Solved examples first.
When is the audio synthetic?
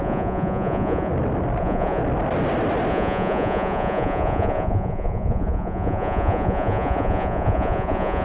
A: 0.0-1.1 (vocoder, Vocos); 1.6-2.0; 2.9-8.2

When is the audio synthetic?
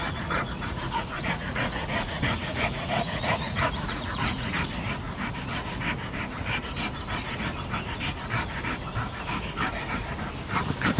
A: 0.0-4.6 (vocoder, Vocos)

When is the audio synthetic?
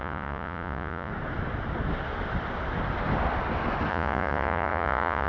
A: 0.0-1.1 (vocoder, Vocos); 3.9-5.3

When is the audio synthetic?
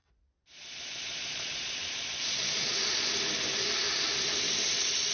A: 0.0-3.1 (vocoder, Vocos)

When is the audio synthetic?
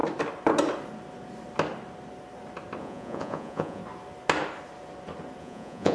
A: 2.8-3.8 (vocoder, Vocos); 5.4-5.9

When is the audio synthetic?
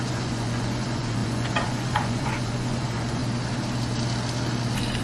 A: 0.0-3.2 (vocoder, Vocos)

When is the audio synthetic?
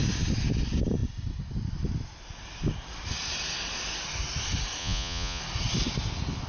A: 4.8-5.4 (vocoder, Vocos)